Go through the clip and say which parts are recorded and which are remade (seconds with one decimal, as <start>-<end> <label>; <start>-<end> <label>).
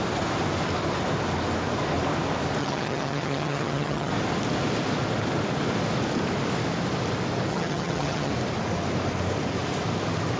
0.0-2.6 recorded; 2.6-4.1 remade; 4.1-7.5 recorded; 7.5-8.3 remade; 8.3-10.4 recorded